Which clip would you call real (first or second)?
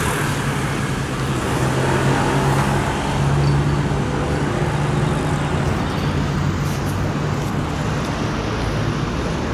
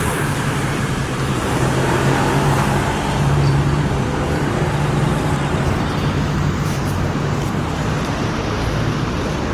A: first